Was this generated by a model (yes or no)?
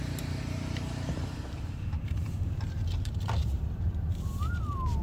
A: yes